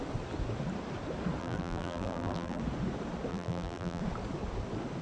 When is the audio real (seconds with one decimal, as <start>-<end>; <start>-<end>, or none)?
0.0-1.4; 2.6-3.3; 4.0-5.0